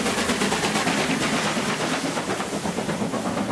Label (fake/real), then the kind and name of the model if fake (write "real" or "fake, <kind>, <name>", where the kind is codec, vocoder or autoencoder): real